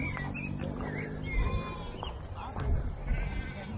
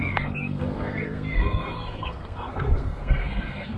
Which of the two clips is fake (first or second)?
second